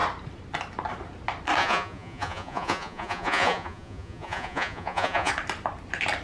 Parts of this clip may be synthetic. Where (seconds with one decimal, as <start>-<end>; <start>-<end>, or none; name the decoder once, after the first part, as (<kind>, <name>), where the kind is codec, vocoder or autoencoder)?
1.6-5.3 (vocoder, Vocos)